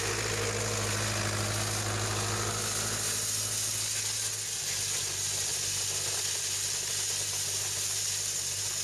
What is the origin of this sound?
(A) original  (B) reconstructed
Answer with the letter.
A